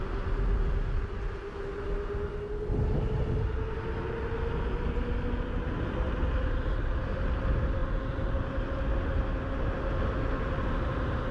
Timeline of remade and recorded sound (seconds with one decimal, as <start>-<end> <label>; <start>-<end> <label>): 0.0-11.3 recorded

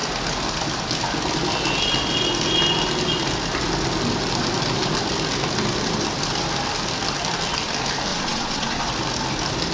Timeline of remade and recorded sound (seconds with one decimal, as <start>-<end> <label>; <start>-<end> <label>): 0.0-8.1 recorded; 8.1-8.8 remade; 8.8-9.7 recorded

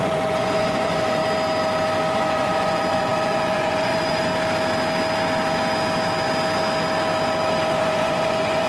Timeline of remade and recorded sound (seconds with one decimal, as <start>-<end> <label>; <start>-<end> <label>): 0.0-1.2 remade; 1.2-2.1 recorded; 2.1-4.3 remade; 4.3-7.7 recorded; 7.7-8.7 remade

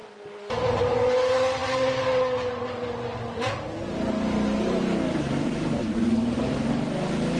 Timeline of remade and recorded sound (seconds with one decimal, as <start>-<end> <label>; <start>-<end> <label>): 0.0-7.4 recorded